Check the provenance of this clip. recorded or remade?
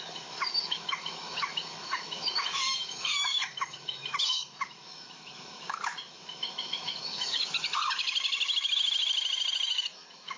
remade